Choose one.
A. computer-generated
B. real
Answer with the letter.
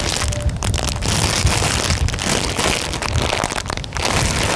B